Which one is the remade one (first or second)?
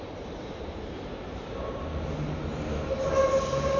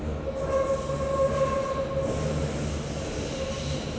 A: first